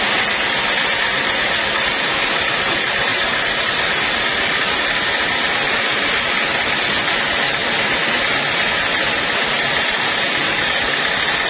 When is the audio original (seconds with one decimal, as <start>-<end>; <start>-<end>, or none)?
0.0-11.5

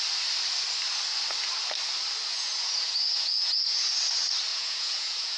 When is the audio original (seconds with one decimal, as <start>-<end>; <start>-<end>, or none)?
0.0-2.3; 3.9-4.5